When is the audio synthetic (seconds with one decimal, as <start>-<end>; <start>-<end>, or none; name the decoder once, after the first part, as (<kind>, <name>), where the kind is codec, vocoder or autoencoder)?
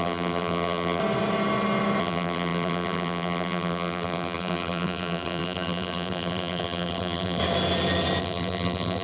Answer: 0.0-1.0 (vocoder, BigVGAN v2); 2.0-7.4; 8.2-9.0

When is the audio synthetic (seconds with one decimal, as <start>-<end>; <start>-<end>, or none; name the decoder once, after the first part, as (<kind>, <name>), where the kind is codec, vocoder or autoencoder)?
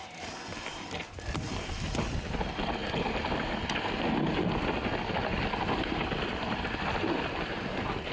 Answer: 0.5-2.1 (vocoder, BigVGAN v2); 2.8-3.5; 5.3-7.5